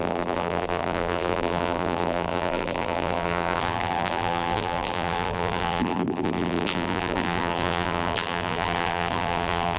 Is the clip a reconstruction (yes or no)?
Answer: yes